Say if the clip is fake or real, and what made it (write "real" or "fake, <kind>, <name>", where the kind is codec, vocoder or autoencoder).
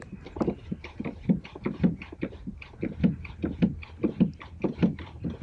fake, vocoder, BigVGAN v2